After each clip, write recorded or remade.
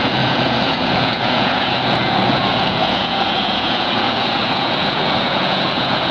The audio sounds remade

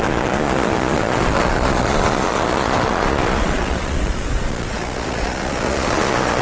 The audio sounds remade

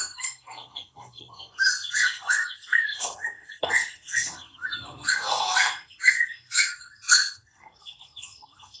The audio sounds remade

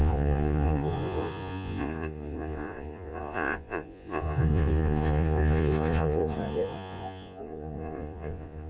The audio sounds remade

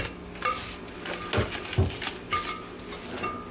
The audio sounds recorded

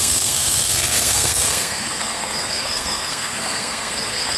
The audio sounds remade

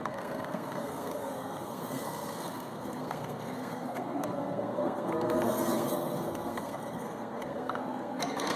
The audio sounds remade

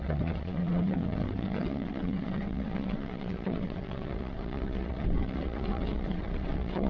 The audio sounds remade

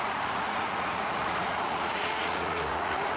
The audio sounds remade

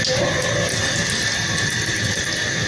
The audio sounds recorded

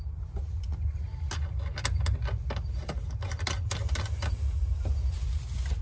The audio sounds recorded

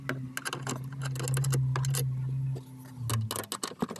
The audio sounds recorded